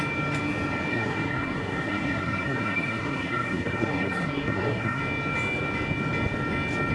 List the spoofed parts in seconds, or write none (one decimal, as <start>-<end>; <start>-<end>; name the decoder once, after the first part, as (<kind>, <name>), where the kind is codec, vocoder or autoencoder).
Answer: 0.9-5.0 (codec, SNAC)